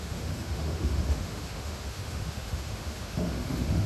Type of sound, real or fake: fake